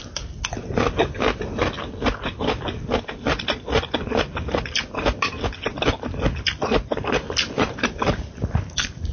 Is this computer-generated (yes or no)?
no